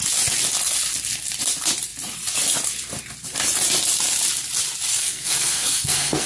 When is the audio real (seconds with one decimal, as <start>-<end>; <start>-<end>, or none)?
0.0-4.9